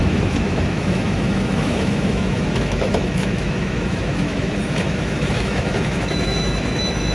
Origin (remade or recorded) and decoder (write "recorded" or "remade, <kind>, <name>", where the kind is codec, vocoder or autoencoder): remade, autoencoder, DAC-VAE